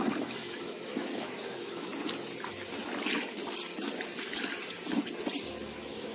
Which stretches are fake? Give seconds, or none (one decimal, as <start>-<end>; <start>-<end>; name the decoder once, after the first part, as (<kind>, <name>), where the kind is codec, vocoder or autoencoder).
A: 0.0-1.9 (autoencoder, DAC-VAE); 5.6-6.1